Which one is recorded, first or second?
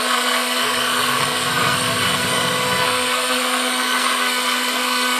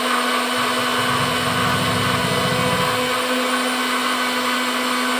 second